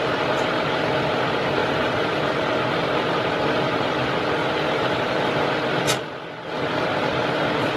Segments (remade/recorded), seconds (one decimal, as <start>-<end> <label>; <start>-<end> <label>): 0.0-1.6 recorded; 1.6-2.4 remade; 2.4-4.4 recorded; 4.4-5.5 remade; 5.5-7.8 recorded